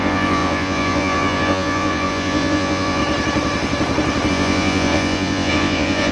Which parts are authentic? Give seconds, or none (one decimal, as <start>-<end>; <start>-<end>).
3.0-4.3